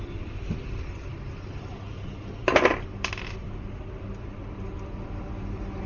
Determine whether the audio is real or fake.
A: fake